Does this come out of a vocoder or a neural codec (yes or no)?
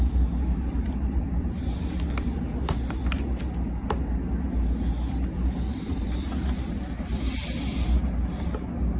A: no